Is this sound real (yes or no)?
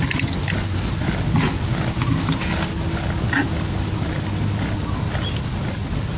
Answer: yes